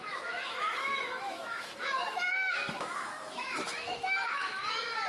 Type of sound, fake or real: fake